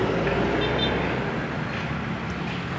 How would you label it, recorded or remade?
recorded